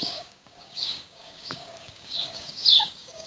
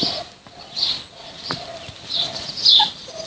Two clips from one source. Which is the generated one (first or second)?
first